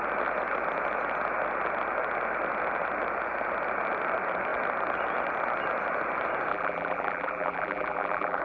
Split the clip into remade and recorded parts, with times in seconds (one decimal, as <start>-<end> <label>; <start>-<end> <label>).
0.0-6.5 recorded; 6.5-8.4 remade